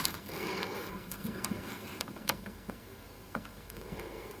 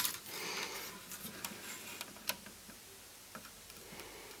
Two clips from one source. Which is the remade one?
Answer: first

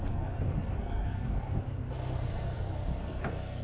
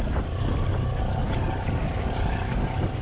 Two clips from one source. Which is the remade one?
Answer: first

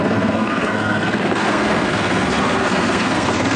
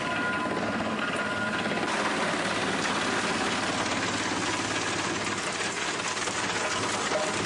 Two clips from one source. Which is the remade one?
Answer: first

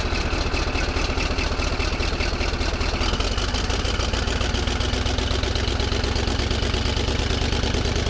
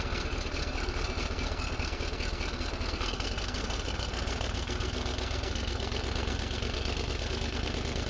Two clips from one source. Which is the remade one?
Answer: second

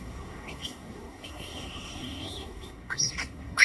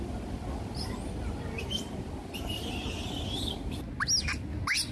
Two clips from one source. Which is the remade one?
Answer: first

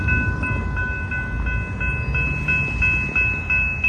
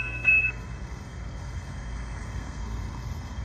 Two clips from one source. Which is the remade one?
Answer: second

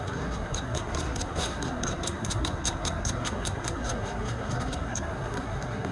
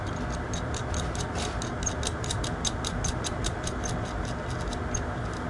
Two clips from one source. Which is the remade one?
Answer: first